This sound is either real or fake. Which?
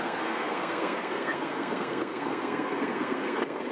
fake